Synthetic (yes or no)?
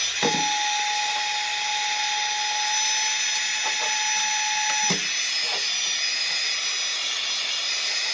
no